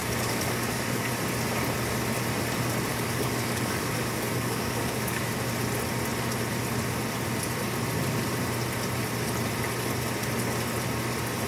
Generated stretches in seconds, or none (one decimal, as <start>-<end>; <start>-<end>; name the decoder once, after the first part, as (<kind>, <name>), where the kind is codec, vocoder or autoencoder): 0.0-1.1 (codec, DAC); 2.9-5.3